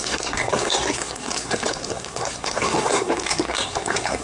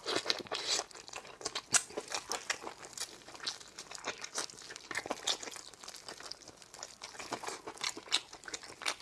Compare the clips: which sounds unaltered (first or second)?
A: second